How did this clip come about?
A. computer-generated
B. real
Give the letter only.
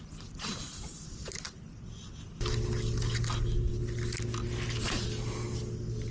B